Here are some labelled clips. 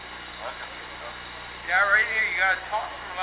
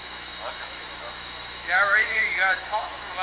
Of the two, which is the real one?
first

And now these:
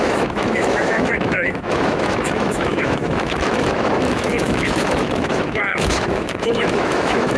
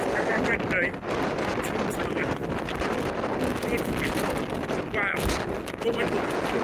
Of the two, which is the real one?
second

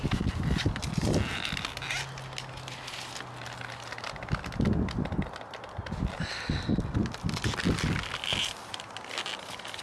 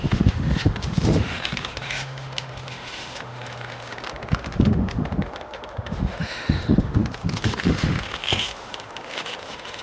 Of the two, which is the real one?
first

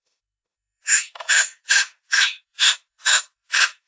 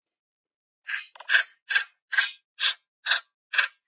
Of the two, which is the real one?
second